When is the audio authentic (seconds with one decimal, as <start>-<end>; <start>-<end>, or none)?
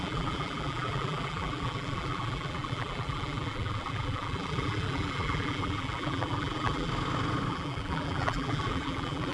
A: 6.9-7.5